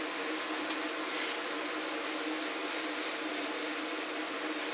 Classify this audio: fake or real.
real